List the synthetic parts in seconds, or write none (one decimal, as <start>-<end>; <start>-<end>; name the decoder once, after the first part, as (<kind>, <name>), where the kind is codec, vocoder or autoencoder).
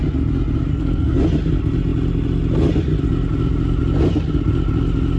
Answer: 0.7-1.2 (codec, SNAC)